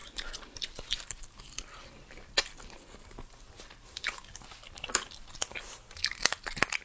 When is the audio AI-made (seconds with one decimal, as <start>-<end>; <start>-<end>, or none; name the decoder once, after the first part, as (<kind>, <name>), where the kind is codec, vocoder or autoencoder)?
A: none